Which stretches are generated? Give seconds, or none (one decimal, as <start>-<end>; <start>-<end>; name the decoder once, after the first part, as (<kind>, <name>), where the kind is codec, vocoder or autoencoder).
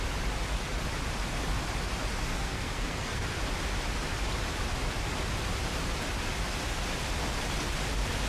2.3-3.4 (codec, SNAC)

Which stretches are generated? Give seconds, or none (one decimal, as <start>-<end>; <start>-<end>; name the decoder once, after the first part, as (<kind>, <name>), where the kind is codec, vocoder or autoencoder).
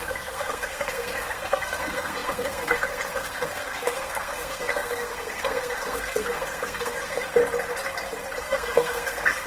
0.0-7.4 (codec, SNAC); 8.4-9.5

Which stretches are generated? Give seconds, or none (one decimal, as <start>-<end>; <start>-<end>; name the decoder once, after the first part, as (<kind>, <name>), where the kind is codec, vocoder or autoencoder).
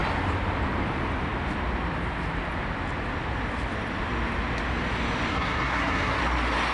5.3-6.2 (codec, SNAC)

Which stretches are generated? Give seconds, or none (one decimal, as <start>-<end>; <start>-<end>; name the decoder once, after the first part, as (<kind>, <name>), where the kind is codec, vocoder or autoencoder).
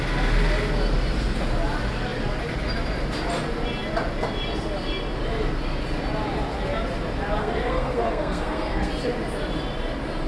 7.4-8.9 (codec, SNAC)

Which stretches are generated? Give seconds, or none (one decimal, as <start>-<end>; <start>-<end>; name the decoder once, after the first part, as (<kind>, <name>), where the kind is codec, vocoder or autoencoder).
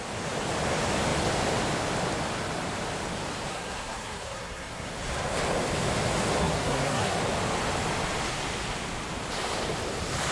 3.5-4.9 (codec, SNAC); 6.4-7.2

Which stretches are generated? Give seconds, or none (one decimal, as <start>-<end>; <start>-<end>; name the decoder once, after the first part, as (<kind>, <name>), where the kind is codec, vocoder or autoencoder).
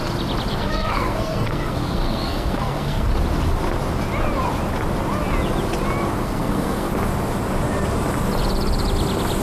0.5-3.1 (codec, SNAC); 6.2-6.9